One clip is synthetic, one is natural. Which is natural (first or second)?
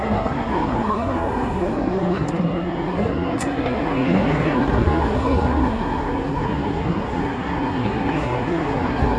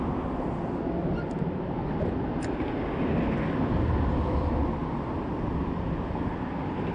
second